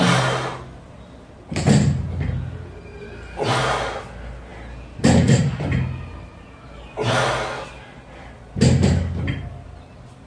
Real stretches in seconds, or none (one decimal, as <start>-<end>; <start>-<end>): 0.0-10.3